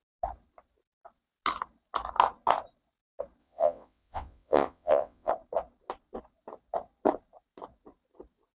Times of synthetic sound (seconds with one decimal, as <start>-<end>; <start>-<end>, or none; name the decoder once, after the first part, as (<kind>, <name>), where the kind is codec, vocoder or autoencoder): 3.4-5.3 (vocoder, WaveNeXt)